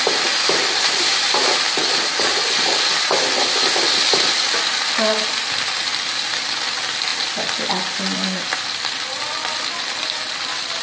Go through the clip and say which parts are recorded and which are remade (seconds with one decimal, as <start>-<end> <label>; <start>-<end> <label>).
0.0-1.8 remade; 1.8-2.4 recorded; 2.4-10.8 remade